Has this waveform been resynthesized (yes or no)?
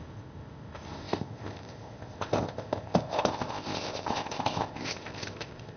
yes